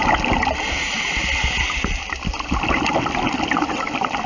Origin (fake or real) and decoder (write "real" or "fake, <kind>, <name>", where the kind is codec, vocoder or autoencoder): real